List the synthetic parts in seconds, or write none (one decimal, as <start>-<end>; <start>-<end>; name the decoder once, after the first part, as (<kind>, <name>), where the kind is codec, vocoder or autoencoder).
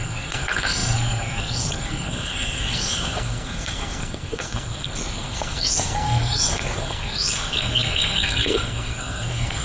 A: 0.0-9.6 (codec, SNAC)